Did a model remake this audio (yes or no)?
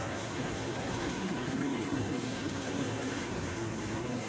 yes